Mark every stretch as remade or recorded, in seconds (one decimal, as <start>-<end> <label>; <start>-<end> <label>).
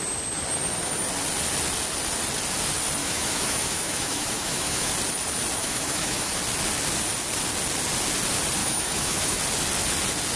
0.0-3.0 recorded; 3.0-4.9 remade; 4.9-5.6 recorded; 5.6-6.4 remade; 6.4-8.6 recorded; 8.6-9.4 remade; 9.4-10.4 recorded